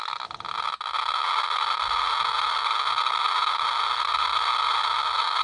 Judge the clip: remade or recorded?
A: recorded